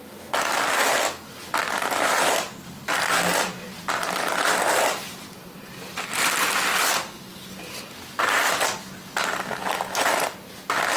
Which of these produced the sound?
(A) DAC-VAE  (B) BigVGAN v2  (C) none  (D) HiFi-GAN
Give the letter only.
C